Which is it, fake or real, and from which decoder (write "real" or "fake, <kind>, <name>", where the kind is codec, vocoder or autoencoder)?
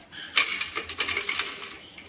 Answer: real